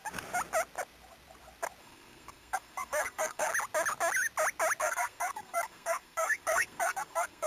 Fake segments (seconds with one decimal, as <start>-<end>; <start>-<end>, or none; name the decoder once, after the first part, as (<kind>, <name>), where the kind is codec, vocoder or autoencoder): 1.8-3.5 (codec, SNAC); 4.8-7.5